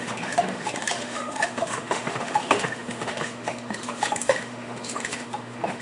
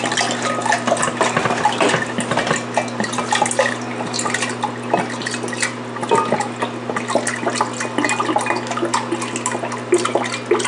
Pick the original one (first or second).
second